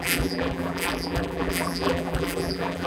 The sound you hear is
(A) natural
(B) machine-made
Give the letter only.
B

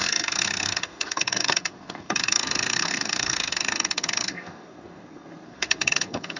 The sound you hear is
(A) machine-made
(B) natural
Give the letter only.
A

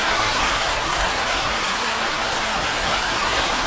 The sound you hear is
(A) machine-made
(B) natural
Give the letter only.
A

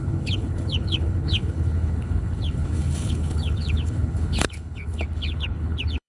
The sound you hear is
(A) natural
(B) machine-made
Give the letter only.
B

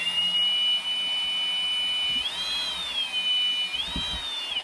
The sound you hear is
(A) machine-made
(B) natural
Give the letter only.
B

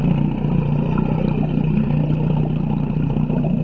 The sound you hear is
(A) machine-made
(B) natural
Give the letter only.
B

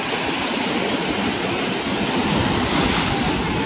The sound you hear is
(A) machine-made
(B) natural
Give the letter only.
B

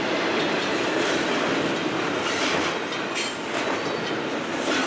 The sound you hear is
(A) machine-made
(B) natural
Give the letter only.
B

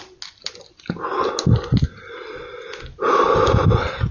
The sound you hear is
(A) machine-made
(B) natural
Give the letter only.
B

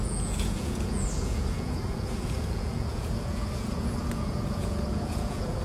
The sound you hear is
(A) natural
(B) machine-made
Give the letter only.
B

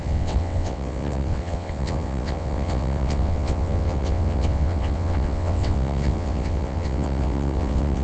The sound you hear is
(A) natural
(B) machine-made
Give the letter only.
B